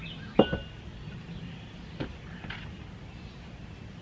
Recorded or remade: recorded